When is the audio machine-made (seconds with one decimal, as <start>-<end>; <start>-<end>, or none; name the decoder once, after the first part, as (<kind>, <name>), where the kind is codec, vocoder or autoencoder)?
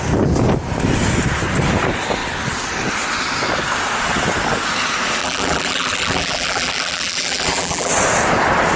5.2-7.9 (vocoder, BigVGAN v2)